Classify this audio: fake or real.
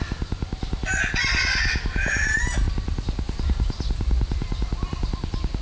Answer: real